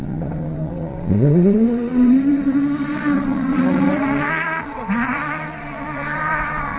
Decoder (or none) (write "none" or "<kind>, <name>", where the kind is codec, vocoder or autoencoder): vocoder, WaveNeXt